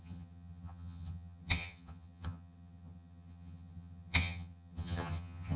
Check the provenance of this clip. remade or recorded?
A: remade